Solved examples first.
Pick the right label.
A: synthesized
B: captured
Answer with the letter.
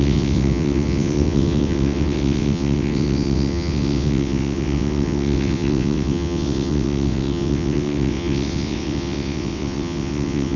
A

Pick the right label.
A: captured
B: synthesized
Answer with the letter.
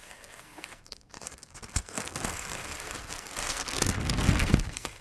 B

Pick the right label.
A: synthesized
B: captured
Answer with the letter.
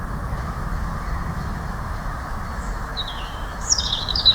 A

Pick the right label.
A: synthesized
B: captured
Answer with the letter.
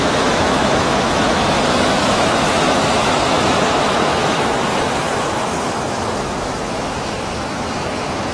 A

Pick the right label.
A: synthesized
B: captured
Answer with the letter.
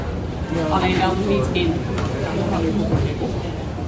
B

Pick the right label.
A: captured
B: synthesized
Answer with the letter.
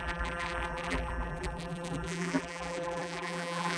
B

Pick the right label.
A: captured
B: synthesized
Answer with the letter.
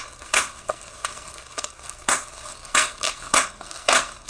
B